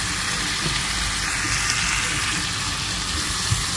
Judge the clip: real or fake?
real